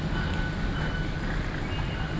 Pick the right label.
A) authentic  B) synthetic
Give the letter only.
A